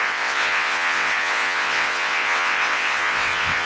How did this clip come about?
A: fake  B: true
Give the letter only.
A